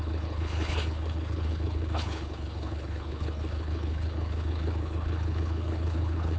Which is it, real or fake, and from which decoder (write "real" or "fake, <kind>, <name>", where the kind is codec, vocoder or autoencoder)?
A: fake, codec, HILCodec